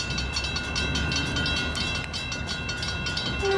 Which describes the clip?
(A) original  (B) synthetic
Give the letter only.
A